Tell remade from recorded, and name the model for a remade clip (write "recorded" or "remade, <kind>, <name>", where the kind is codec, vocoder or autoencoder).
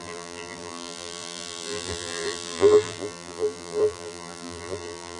remade, vocoder, BigVGAN v2